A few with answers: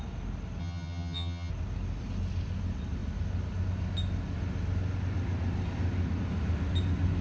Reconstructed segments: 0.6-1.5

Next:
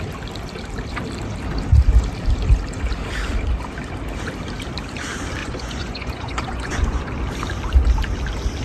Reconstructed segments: 5.4-7.0

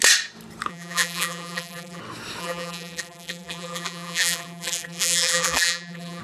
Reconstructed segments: 0.7-2.0; 2.4-6.2

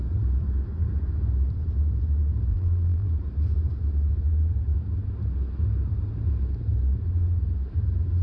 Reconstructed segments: 2.5-3.1